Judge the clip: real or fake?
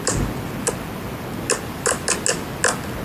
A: real